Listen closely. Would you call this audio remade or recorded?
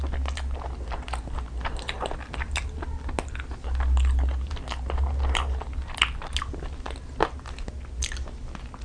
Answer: recorded